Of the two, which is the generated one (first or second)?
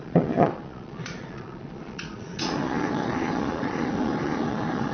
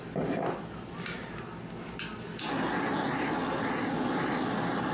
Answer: first